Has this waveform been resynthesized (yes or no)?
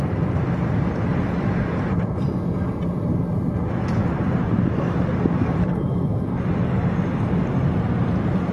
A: no